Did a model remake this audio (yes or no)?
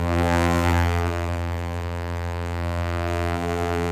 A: yes